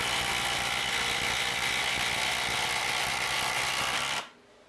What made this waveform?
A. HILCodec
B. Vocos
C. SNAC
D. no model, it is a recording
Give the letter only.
D